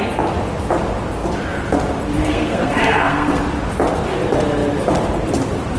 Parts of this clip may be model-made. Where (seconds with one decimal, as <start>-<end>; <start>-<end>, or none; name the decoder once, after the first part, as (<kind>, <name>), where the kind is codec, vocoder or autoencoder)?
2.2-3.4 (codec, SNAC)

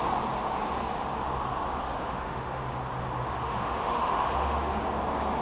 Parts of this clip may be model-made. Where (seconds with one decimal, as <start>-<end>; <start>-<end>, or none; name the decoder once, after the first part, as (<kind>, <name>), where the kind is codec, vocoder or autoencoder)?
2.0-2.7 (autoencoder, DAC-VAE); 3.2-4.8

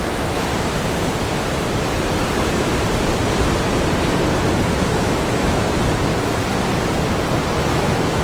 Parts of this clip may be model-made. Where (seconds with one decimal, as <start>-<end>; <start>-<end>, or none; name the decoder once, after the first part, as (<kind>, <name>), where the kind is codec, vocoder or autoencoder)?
0.0-0.5 (autoencoder, DAC-VAE); 5.0-6.1; 7.5-8.2